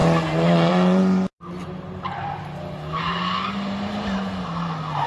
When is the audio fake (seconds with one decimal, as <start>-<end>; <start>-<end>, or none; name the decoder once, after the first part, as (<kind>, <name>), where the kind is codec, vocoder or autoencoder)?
none